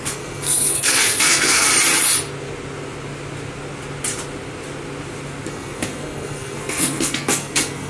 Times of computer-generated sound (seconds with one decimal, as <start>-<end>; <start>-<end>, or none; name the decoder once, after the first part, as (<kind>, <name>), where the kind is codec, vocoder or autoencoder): 0.0-1.7 (codec, SNAC); 5.5-7.9